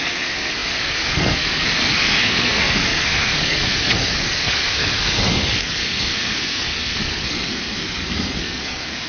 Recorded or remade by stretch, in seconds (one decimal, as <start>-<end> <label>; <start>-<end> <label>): 0.0-9.1 remade